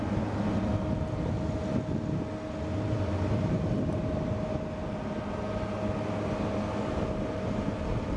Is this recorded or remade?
recorded